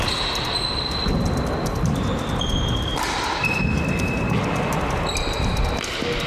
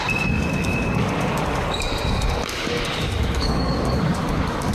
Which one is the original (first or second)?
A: first